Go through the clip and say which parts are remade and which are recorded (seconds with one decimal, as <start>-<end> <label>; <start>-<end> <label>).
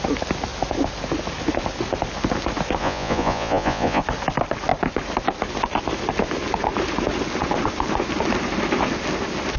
0.0-2.8 recorded; 2.8-4.0 remade; 4.0-9.6 recorded